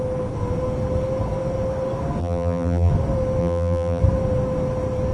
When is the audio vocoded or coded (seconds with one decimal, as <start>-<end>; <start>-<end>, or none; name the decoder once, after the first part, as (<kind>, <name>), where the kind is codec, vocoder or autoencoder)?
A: 2.2-2.9 (vocoder, BigVGAN v2); 3.4-4.0